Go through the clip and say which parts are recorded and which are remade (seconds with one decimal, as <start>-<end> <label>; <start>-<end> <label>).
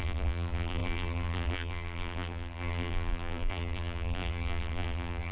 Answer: 0.0-5.3 remade